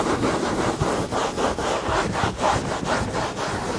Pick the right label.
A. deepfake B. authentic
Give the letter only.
B